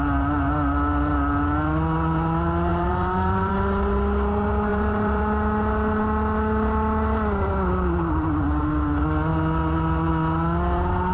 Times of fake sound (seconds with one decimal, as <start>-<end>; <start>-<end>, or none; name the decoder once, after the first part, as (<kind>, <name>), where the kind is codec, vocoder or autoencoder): 2.7-3.5 (vocoder, BigVGAN v2); 4.7-5.2